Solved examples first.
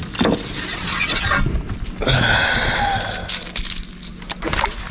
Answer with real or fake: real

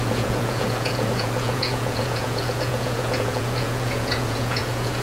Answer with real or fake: fake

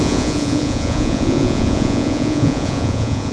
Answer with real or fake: fake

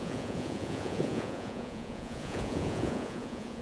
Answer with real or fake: fake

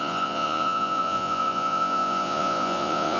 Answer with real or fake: fake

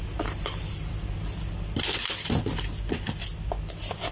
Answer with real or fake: real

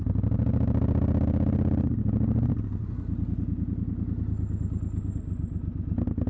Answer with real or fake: real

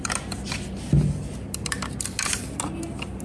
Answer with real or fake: real